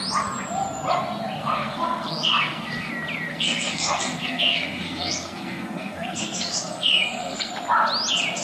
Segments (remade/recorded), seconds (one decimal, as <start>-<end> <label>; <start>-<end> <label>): 0.0-1.4 recorded; 1.4-2.9 remade; 2.9-3.3 recorded; 3.3-7.5 remade; 7.5-8.4 recorded

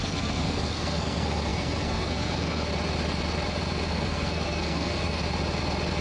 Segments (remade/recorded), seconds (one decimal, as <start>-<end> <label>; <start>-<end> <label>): 0.0-2.7 remade; 2.7-3.9 recorded; 3.9-5.2 remade; 5.2-6.0 recorded